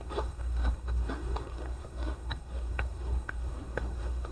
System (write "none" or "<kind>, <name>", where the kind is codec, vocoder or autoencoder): codec, SNAC